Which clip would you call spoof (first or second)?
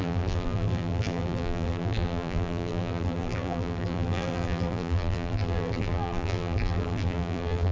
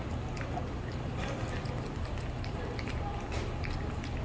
first